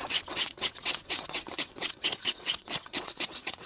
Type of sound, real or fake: fake